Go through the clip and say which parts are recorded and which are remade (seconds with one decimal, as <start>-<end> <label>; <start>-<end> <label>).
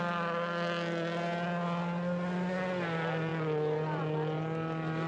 0.0-5.1 recorded